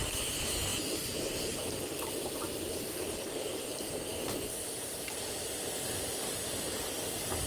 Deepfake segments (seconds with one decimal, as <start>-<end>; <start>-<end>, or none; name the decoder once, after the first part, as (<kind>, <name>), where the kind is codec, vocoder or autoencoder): 0.7-4.8 (vocoder, BigVGAN v2)